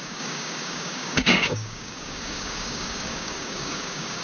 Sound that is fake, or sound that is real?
fake